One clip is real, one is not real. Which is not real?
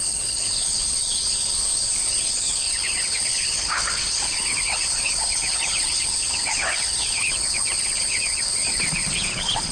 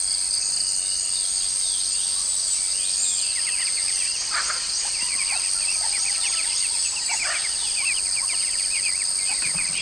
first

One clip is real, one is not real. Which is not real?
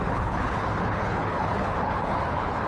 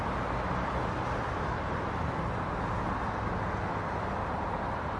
first